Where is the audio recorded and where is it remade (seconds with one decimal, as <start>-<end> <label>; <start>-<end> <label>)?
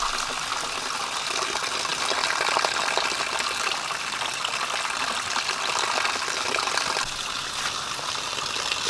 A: 0.0-8.9 recorded